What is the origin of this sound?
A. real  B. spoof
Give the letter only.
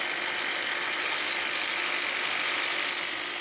A